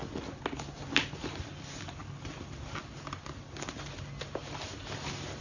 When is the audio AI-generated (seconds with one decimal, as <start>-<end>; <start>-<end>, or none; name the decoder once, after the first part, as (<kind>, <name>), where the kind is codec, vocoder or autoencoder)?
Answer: none

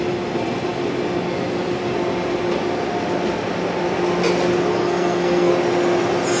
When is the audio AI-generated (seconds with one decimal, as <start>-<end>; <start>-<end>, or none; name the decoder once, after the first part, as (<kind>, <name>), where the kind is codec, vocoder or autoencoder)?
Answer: 4.7-5.5 (codec, SNAC)

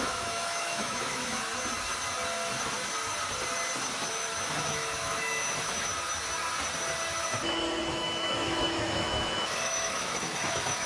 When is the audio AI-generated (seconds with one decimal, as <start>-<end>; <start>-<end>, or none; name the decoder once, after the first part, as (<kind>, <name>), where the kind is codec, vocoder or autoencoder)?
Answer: 0.0-1.5 (autoencoder, DAC-VAE); 4.1-5.9; 7.9-10.9

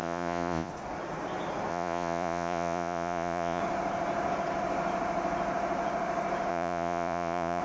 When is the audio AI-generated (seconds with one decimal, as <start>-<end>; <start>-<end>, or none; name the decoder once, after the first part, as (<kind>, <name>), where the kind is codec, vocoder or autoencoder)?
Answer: 0.0-0.7 (vocoder, Vocos); 1.7-3.6; 6.5-7.6

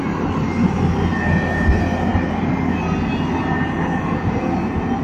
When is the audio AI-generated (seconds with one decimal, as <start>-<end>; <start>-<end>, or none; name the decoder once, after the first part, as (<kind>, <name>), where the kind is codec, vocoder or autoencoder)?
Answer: none

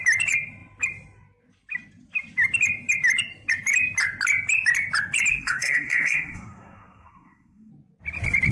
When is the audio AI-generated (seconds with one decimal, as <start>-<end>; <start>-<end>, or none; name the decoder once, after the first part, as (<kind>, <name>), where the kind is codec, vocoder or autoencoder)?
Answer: 5.3-7.7 (codec, SNAC)

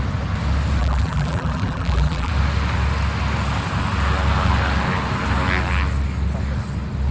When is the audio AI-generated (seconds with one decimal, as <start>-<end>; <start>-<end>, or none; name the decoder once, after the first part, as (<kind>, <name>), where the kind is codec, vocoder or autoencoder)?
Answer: 0.8-2.3 (vocoder, BigVGAN v2)